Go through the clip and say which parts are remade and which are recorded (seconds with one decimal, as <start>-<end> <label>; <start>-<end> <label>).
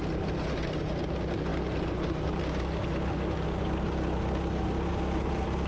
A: 0.0-5.7 recorded